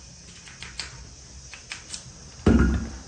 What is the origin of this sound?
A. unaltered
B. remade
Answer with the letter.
A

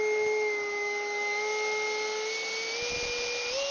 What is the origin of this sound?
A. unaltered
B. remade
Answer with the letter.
A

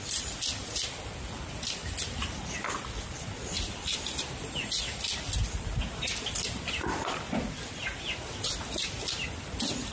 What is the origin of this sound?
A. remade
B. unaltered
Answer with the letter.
B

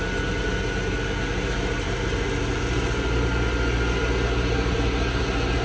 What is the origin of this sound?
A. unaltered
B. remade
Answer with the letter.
A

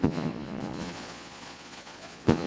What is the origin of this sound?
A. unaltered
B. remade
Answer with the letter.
B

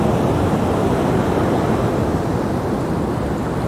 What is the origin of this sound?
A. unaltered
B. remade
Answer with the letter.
A